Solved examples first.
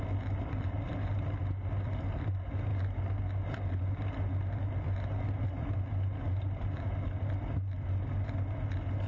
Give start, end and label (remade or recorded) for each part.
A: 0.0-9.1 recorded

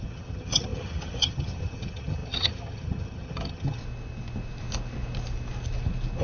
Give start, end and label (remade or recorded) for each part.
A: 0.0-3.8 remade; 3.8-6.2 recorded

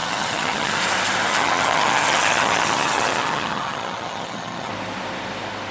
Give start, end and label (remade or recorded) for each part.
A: 0.0-0.8 remade; 0.8-1.3 recorded; 1.3-4.7 remade; 4.7-5.7 recorded

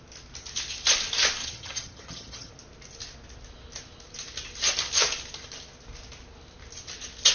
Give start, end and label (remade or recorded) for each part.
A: 0.0-1.4 recorded; 1.4-2.5 remade; 2.5-7.3 recorded

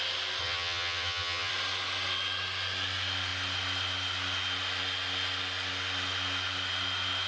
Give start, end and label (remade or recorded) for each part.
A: 0.0-0.4 recorded; 0.4-1.5 remade; 1.5-7.3 recorded

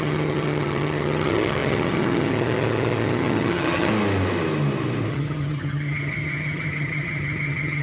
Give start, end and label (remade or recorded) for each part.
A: 0.0-3.9 remade; 3.9-5.1 recorded; 5.1-7.8 remade

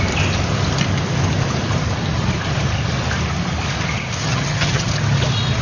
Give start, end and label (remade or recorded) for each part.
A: 0.0-4.2 recorded; 4.2-4.9 remade; 4.9-5.6 recorded